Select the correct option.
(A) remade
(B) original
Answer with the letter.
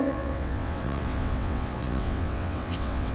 A